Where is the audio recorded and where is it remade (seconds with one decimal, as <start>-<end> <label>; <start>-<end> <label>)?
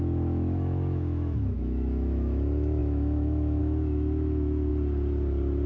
0.0-4.7 remade; 4.7-5.7 recorded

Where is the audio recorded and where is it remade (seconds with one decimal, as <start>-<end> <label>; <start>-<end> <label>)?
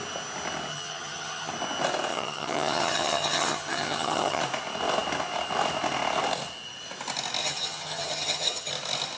0.0-0.7 recorded; 0.7-1.5 remade; 1.5-2.1 recorded; 2.1-4.4 remade; 4.4-7.4 recorded; 7.4-8.7 remade; 8.7-9.2 recorded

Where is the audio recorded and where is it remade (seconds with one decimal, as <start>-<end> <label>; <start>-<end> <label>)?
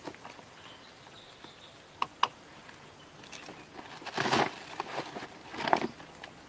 0.0-6.5 recorded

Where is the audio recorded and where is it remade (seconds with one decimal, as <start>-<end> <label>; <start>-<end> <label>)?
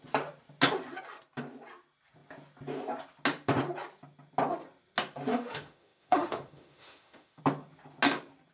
0.0-5.3 recorded; 5.3-7.4 remade; 7.4-8.5 recorded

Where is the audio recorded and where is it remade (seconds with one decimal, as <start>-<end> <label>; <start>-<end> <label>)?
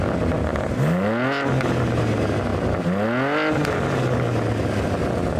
0.0-5.4 recorded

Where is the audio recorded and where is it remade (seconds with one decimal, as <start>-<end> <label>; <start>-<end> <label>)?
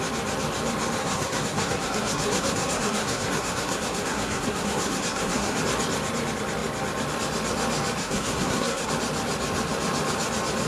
0.0-1.0 recorded; 1.0-5.6 remade; 5.6-8.0 recorded; 8.0-8.9 remade; 8.9-10.7 recorded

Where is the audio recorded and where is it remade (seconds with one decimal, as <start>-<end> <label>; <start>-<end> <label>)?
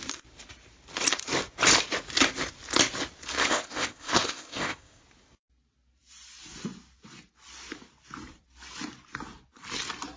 0.0-3.4 recorded; 3.4-5.0 remade; 5.0-10.2 recorded